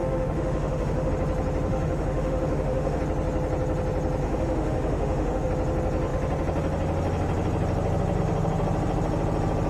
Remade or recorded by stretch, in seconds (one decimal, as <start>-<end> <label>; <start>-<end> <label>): 0.0-1.1 remade; 1.1-1.7 recorded; 1.7-3.0 remade; 3.0-4.2 recorded; 4.2-5.5 remade; 5.5-9.7 recorded